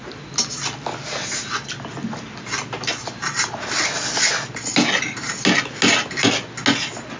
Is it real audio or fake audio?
real